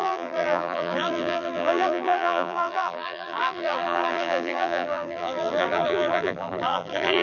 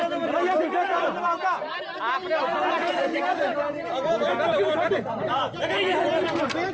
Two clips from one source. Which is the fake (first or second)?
first